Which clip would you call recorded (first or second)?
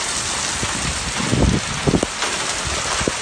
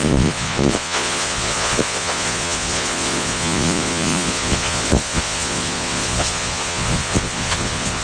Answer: first